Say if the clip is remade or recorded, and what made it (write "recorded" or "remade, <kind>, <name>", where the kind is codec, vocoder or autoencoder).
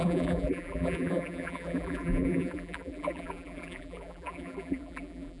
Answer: remade, vocoder, BigVGAN v2